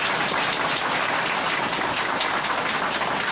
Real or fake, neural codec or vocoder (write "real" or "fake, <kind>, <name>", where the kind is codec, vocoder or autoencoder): real